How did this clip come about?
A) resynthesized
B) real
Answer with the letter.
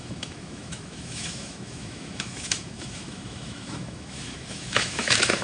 A